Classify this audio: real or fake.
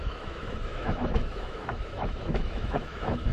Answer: fake